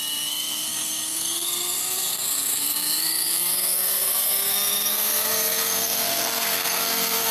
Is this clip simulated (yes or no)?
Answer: yes